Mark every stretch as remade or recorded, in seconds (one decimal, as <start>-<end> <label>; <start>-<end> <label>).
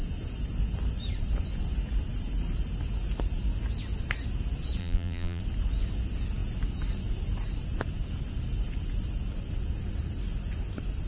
0.0-4.8 recorded; 4.8-5.4 remade; 5.4-11.1 recorded